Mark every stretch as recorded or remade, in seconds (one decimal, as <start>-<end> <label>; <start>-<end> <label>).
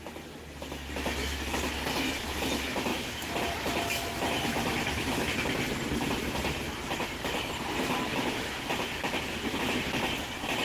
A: 0.0-1.2 recorded; 1.2-1.7 remade; 1.7-2.9 recorded; 2.9-3.4 remade; 3.4-4.5 recorded; 4.5-5.3 remade; 5.3-8.1 recorded; 8.1-8.7 remade; 8.7-10.6 recorded